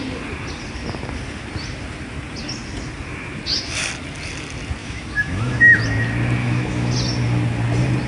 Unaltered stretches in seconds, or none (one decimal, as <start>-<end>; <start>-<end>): 0.0-4.8; 5.8-6.4; 6.9-8.1